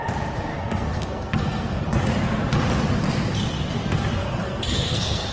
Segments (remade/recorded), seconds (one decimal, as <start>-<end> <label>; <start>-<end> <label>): 0.0-0.5 recorded; 0.5-1.8 remade; 1.8-4.2 recorded; 4.2-5.3 remade